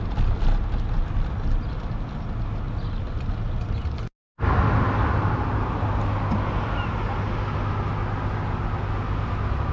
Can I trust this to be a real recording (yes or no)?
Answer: yes